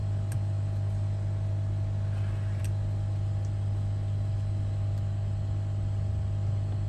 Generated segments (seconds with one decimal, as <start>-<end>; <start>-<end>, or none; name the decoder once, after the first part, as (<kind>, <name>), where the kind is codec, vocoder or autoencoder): none